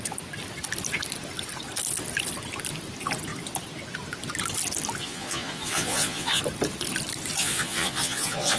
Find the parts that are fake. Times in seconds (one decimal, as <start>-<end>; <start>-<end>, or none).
5.0-6.4; 7.4-8.6